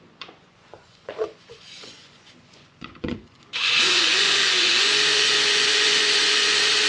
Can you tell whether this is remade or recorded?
remade